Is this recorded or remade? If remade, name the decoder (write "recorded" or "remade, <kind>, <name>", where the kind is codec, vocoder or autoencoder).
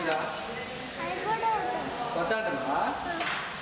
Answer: recorded